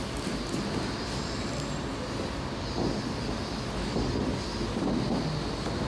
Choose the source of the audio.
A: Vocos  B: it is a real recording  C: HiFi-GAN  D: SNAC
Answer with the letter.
B